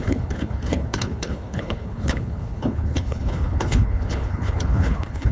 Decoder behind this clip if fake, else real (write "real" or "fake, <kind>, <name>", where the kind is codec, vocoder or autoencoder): fake, codec, HILCodec